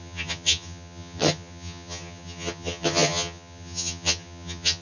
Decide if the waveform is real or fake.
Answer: fake